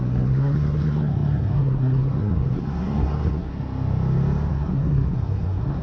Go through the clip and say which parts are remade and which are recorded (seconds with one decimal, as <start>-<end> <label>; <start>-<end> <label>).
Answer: 0.0-3.5 remade; 3.5-4.5 recorded; 4.5-5.8 remade